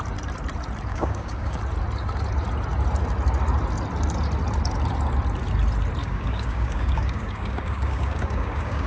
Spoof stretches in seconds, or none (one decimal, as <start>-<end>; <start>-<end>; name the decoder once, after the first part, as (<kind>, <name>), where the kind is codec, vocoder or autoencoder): 0.9-1.6 (codec, DAC); 6.0-8.9